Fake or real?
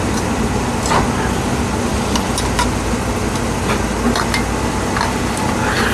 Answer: real